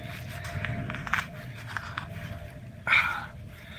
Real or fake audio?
real